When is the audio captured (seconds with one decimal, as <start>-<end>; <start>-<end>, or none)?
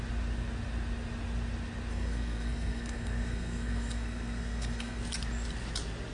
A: 0.0-1.9; 5.0-6.1